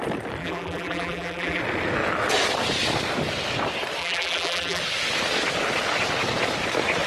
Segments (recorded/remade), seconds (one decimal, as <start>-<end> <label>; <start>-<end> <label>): 0.0-0.4 recorded; 0.4-1.6 remade; 1.6-4.0 recorded; 4.0-4.8 remade; 4.8-7.1 recorded